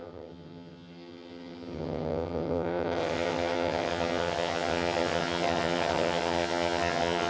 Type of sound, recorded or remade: remade